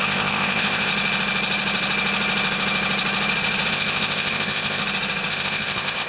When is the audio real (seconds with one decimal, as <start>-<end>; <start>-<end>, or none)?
0.9-3.7; 4.8-5.3